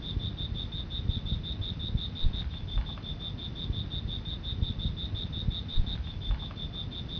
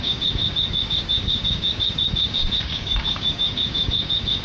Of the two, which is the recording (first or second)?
first